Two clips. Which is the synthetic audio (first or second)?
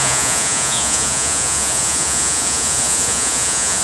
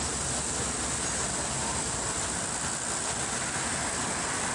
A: first